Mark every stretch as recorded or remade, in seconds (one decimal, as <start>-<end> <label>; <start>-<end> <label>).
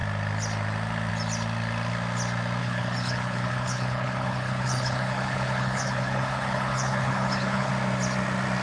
0.0-2.6 recorded; 2.6-7.7 remade; 7.7-8.6 recorded